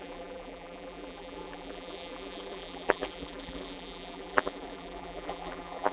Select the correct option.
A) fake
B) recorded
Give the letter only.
A